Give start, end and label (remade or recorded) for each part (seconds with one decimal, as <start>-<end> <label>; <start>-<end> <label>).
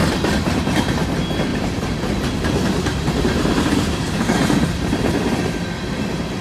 0.0-1.1 remade; 1.1-1.5 recorded; 1.5-5.3 remade; 5.3-6.4 recorded